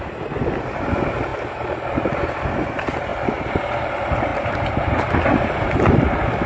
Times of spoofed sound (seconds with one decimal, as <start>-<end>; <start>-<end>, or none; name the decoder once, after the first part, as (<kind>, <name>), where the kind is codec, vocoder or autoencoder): none